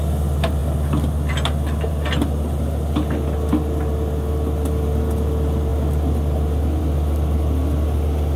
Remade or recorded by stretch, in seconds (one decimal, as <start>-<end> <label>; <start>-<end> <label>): 0.0-8.4 recorded